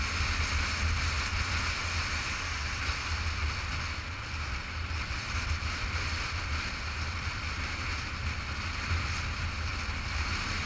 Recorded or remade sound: recorded